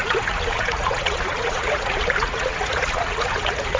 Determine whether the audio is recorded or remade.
remade